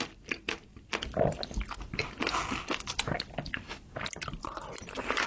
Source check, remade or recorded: recorded